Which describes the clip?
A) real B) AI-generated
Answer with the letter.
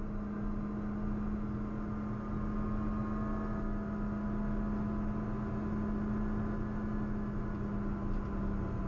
A